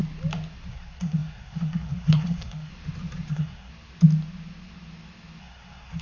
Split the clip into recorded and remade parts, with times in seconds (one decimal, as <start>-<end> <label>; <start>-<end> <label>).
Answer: 0.0-0.7 recorded; 0.7-2.7 remade; 2.7-3.3 recorded; 3.3-3.7 remade; 3.7-5.4 recorded; 5.4-6.0 remade